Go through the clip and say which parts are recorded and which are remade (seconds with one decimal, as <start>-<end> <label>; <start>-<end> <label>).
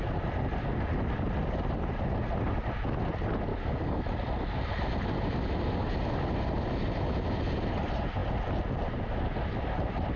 0.0-3.5 recorded; 3.5-4.0 remade; 4.0-10.2 recorded